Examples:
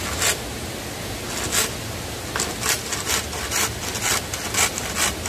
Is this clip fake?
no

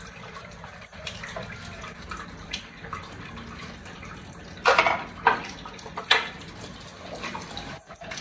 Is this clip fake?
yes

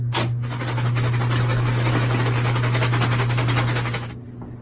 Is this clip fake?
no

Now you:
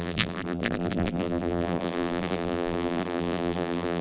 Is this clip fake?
yes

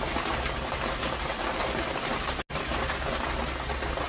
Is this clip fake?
no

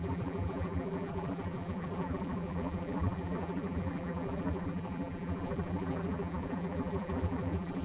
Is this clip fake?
yes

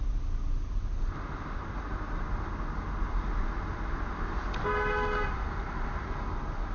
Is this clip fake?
no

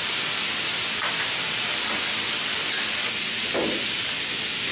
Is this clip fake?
yes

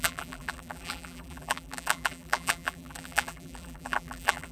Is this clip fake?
yes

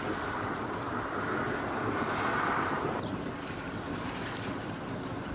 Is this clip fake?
no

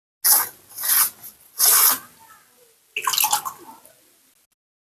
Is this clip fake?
no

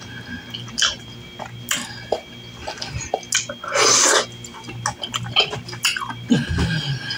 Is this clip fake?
no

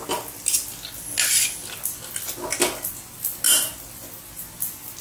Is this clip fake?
no